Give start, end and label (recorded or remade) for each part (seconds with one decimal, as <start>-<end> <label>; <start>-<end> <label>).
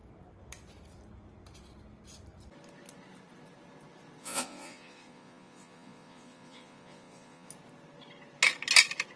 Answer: 0.0-4.2 recorded; 4.2-7.5 remade; 7.5-9.2 recorded